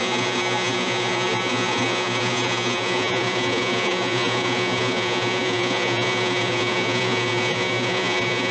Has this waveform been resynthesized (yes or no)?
yes